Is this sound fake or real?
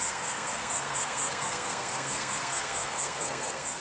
fake